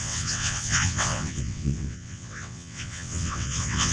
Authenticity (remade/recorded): remade